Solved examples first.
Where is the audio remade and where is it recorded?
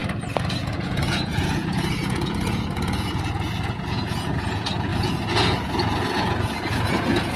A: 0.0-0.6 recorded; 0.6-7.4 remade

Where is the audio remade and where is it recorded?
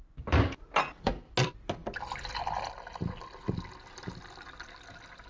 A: 0.0-5.3 recorded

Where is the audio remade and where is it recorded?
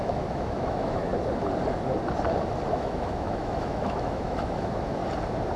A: 0.0-1.1 remade; 1.1-2.7 recorded; 2.7-5.0 remade; 5.0-5.6 recorded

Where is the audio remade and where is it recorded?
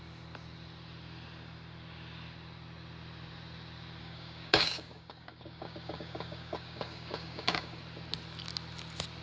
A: 0.0-4.0 recorded; 4.0-7.8 remade; 7.8-9.2 recorded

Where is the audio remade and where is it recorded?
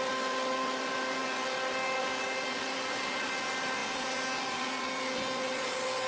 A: 0.0-6.1 recorded